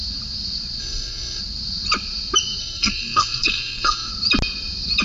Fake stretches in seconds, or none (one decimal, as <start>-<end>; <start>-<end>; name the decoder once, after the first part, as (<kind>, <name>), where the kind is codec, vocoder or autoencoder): 0.8-1.4 (codec, SNAC); 2.6-4.1